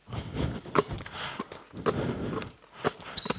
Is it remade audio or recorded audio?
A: recorded